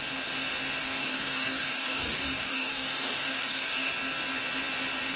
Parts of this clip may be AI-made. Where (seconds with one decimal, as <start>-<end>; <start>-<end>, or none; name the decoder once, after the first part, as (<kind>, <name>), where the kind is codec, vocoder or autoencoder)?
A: 0.8-3.9 (codec, DAC)